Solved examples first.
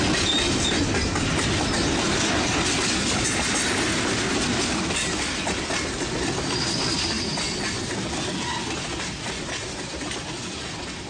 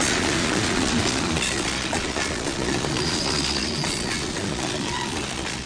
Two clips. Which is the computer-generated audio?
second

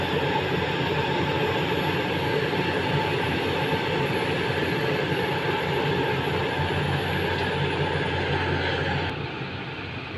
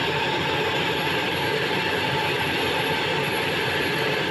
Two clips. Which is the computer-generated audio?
second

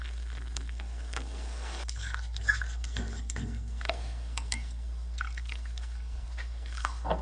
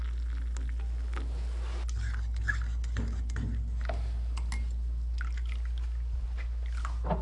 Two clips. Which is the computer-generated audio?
first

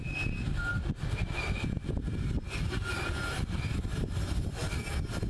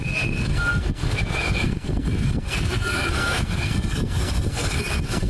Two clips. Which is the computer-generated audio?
second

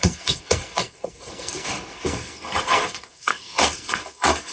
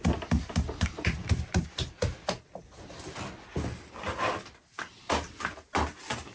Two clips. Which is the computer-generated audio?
first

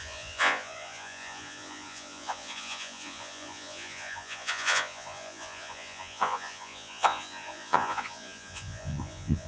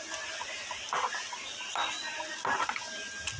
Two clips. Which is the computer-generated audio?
first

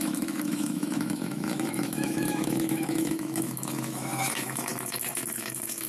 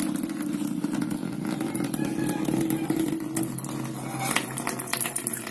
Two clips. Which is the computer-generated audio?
first